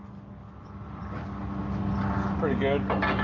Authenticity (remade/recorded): recorded